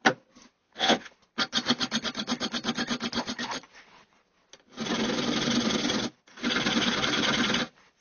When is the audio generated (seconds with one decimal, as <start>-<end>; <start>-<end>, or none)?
0.6-1.1